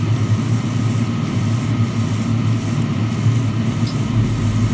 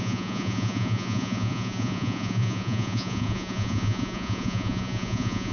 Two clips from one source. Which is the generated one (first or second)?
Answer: second